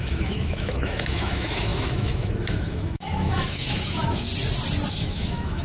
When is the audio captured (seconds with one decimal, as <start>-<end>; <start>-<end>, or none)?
4.3-4.9